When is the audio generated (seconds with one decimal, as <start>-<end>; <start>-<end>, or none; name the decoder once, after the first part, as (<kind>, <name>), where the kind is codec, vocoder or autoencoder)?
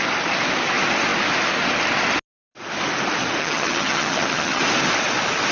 3.4-4.6 (vocoder, HiFi-GAN)